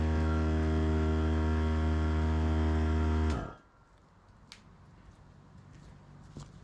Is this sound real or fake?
real